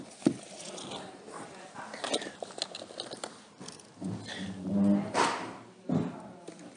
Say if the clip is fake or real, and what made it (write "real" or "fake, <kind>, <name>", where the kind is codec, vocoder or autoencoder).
real